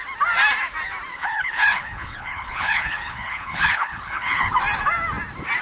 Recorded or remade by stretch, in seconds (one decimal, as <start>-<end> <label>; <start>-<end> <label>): 0.0-1.1 recorded; 1.1-4.5 remade; 4.5-5.6 recorded